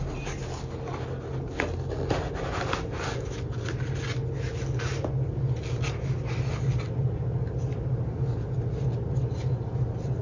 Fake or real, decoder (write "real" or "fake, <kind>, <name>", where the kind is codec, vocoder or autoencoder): real